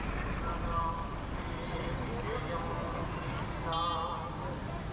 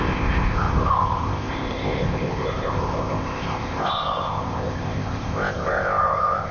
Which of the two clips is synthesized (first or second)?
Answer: second